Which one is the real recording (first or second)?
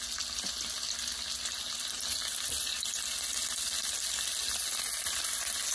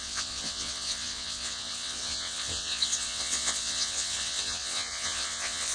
first